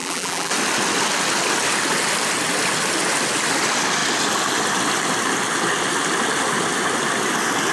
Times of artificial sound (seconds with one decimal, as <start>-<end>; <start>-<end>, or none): 0.0-0.5